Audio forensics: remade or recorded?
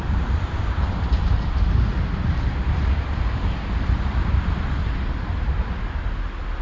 remade